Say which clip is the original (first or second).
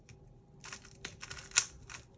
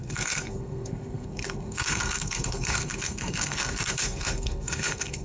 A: first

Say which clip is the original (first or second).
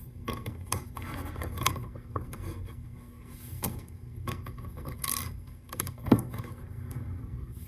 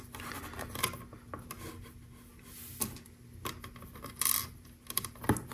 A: second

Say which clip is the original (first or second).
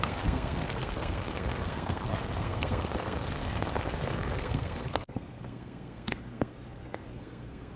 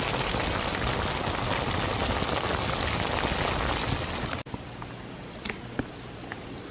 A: second